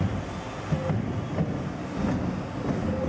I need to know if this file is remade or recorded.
recorded